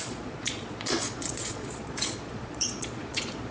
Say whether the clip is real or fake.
fake